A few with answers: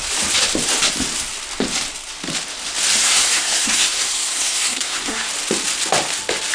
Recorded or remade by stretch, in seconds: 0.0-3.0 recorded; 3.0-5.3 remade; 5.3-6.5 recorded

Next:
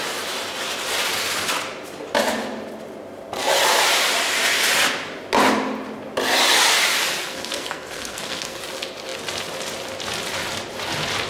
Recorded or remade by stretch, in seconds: 0.0-7.2 recorded; 7.2-8.6 remade; 8.6-11.3 recorded

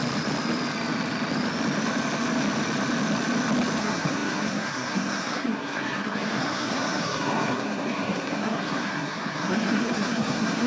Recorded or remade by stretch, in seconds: 0.0-3.8 recorded; 3.8-10.7 remade

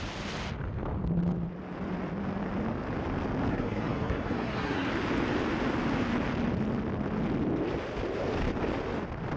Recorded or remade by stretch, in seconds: 0.0-3.5 recorded; 3.5-4.9 remade; 4.9-9.4 recorded

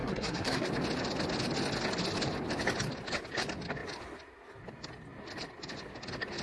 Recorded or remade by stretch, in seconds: 0.0-0.7 remade; 0.7-6.4 recorded

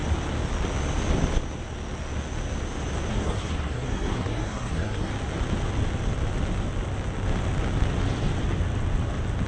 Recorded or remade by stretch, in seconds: 0.0-3.1 recorded; 3.1-5.1 remade; 5.1-9.5 recorded

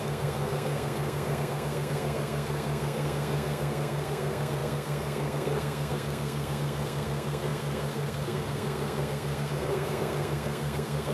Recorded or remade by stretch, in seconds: 0.0-11.1 remade

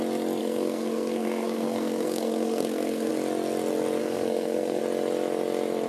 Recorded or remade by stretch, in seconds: 0.0-0.4 recorded; 0.4-3.1 remade; 3.1-4.0 recorded; 4.0-4.8 remade; 4.8-5.9 recorded